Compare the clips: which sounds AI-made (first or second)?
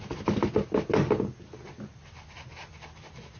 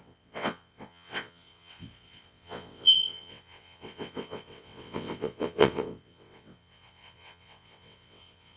second